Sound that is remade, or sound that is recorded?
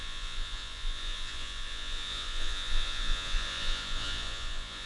remade